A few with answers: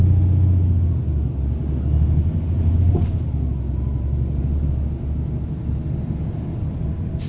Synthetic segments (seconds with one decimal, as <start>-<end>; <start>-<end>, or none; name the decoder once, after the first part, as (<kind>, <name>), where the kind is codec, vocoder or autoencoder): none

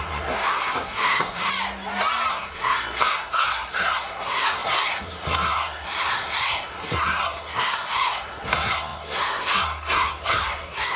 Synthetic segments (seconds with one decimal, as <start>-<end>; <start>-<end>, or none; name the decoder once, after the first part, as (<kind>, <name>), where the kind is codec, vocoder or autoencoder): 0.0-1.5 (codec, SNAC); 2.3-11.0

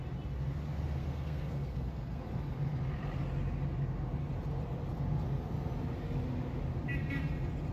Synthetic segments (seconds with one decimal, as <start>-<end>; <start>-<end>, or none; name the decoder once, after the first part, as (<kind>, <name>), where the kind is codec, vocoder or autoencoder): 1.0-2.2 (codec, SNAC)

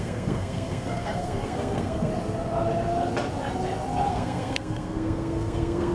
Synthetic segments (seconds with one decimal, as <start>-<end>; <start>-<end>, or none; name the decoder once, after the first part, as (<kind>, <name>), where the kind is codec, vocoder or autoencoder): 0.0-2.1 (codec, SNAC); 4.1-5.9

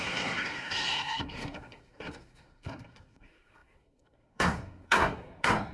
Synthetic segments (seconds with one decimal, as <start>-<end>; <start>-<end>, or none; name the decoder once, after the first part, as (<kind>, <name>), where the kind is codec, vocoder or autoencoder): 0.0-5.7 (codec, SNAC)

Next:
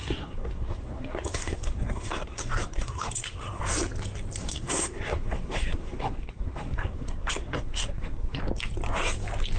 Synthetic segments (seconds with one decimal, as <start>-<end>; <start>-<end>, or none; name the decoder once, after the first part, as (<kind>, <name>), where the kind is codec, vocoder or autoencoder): 0.0-3.6 (codec, SNAC); 4.4-8.4

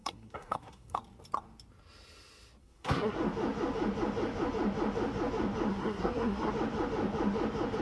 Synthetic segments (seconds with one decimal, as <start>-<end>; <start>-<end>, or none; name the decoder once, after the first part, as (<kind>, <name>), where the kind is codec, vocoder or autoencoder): 0.0-1.0 (codec, SNAC); 2.6-3.2; 5.7-6.5